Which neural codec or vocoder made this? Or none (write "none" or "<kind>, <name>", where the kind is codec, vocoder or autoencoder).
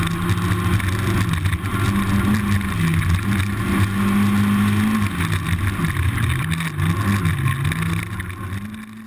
none